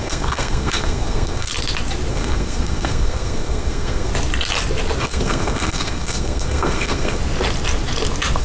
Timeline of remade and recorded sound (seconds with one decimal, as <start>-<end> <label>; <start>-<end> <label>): 0.0-1.5 remade; 1.5-2.1 recorded; 2.1-4.1 remade; 4.1-5.0 recorded; 5.0-7.2 remade; 7.2-8.4 recorded